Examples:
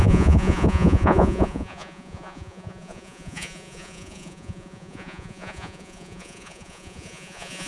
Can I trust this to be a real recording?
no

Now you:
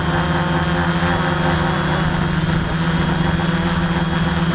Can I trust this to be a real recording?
yes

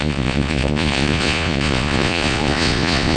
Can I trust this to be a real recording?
no